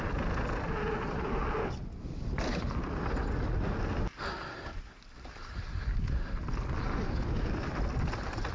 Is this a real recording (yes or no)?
yes